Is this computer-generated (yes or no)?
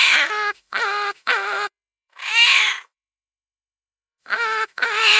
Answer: yes